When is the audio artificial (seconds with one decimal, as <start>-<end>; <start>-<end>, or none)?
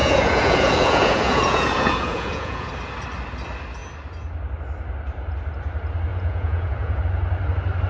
0.0-2.7; 6.1-7.0